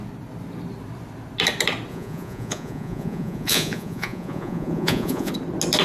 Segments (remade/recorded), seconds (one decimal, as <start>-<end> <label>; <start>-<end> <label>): 0.0-1.9 recorded; 1.9-5.3 remade; 5.3-5.8 recorded